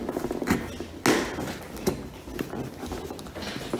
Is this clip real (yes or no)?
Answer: yes